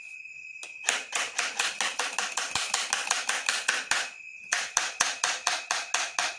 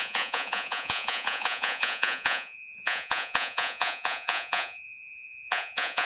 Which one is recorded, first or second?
first